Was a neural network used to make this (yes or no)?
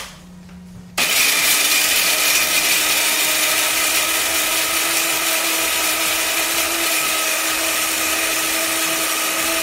no